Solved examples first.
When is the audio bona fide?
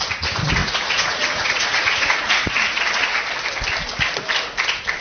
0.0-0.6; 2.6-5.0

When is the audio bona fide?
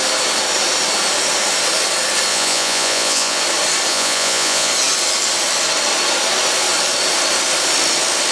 0.0-2.3; 3.4-3.9; 4.7-8.3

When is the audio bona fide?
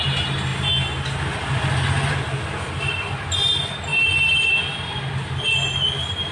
0.0-6.3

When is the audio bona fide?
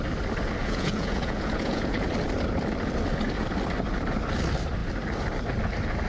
0.0-0.6; 2.1-6.1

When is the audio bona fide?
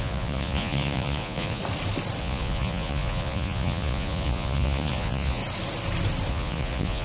1.6-2.2; 5.4-6.3